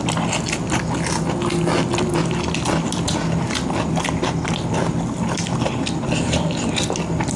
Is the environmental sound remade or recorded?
recorded